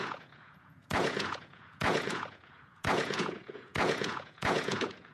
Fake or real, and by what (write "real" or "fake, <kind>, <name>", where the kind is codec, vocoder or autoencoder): fake, vocoder, Vocos